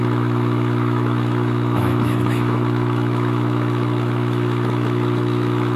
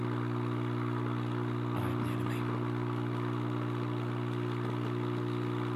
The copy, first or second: first